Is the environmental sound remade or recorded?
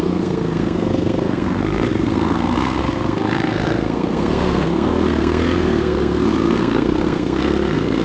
remade